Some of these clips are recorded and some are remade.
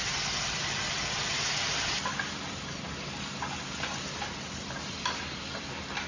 recorded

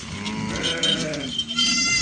recorded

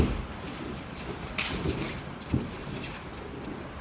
recorded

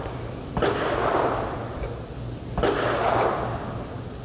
recorded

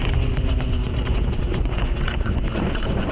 remade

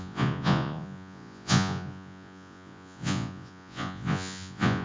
remade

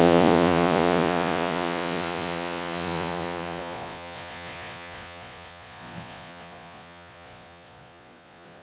remade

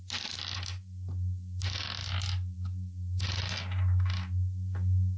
recorded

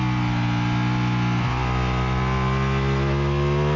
recorded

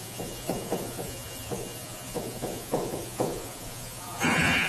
remade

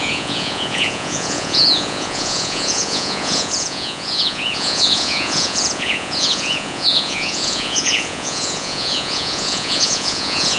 remade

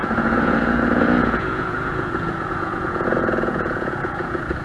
remade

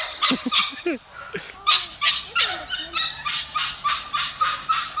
recorded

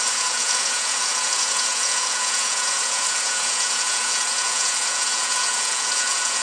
remade